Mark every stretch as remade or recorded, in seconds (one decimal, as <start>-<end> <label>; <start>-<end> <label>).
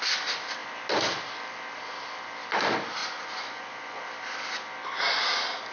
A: 0.0-3.0 recorded; 3.0-4.0 remade; 4.0-5.7 recorded